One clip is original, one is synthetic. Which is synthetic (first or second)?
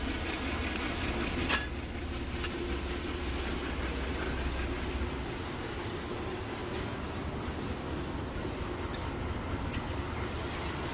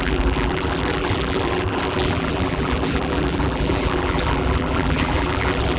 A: second